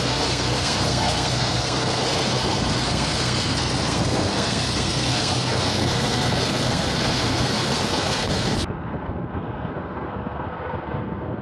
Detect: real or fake fake